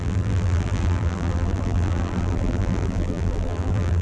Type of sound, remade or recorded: remade